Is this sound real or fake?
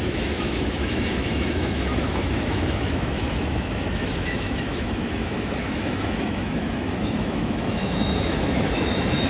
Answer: fake